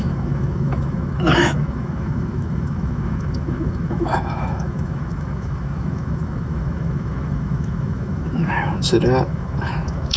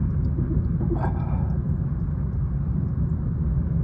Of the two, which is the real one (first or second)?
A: second